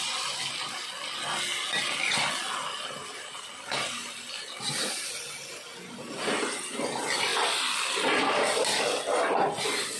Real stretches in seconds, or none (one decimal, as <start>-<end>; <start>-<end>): 0.0-10.0